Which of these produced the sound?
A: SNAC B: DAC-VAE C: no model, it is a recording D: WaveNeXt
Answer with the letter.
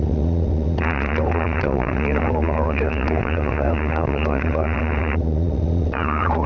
D